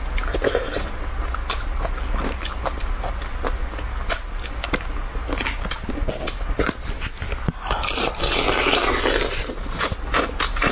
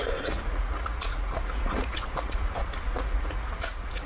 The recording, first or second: first